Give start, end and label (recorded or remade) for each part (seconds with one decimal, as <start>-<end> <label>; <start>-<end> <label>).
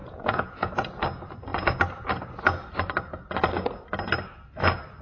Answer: 0.0-0.9 remade; 0.9-5.0 recorded